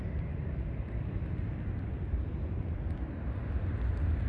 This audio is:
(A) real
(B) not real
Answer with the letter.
A